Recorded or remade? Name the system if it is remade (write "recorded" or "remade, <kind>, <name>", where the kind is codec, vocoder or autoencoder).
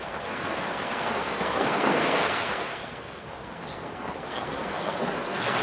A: remade, codec, SNAC